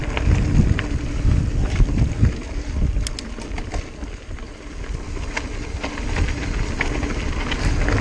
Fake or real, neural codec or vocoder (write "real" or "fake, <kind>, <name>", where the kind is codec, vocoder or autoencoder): real